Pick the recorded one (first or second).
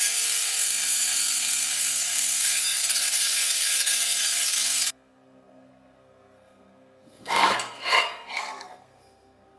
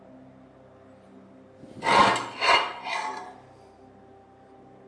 second